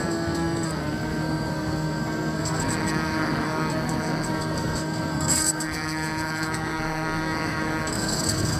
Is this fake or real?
fake